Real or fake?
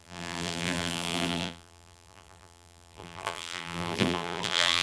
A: fake